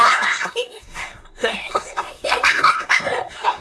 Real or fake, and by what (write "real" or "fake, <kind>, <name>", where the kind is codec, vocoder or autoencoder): fake, codec, SNAC